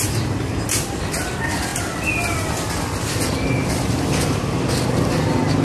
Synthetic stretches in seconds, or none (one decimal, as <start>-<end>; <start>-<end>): none